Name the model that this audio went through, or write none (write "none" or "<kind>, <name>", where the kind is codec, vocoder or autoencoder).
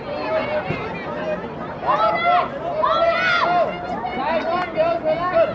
none